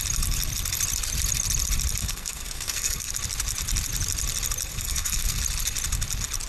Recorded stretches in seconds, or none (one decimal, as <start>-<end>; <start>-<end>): 0.0-2.0; 3.1-4.7; 5.4-6.5